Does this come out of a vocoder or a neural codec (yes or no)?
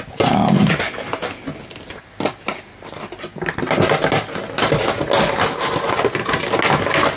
no